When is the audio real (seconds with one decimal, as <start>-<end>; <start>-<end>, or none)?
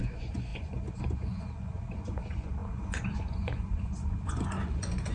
none